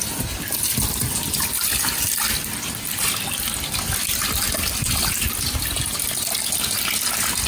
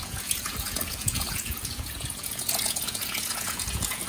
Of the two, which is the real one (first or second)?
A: first